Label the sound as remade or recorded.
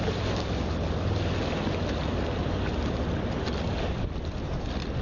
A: recorded